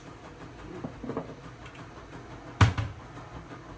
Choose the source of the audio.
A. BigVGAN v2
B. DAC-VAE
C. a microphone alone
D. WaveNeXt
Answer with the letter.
C